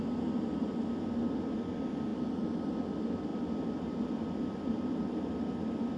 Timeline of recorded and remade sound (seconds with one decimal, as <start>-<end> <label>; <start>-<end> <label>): 0.0-6.0 recorded